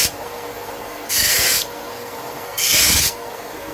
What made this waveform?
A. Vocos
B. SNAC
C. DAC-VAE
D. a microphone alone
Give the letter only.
B